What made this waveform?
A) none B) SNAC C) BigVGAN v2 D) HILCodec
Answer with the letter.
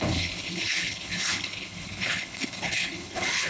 D